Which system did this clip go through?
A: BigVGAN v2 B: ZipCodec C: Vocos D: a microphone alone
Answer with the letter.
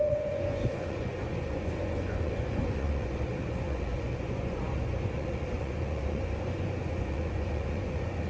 C